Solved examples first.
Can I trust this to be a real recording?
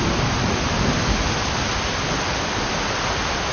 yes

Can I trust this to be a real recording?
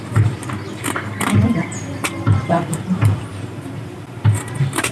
no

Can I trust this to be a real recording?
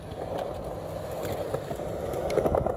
yes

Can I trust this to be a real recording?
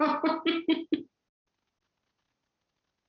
yes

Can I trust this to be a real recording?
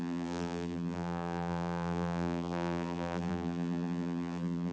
no